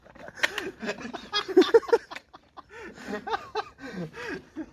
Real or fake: fake